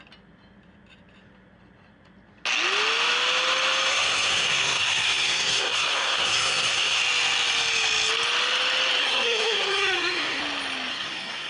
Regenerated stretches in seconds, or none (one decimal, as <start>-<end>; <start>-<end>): 3.9-7.0; 9.0-10.4; 10.9-11.5